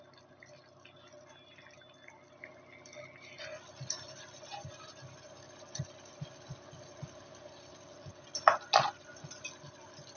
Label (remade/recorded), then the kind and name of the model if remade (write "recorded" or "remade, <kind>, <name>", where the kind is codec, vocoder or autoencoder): recorded